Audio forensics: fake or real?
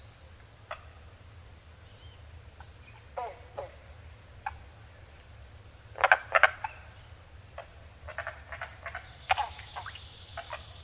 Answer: real